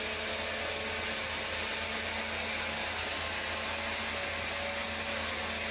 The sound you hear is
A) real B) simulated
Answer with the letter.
A